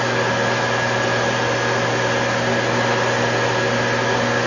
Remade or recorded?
recorded